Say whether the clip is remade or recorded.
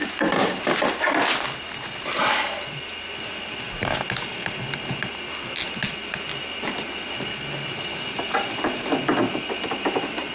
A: recorded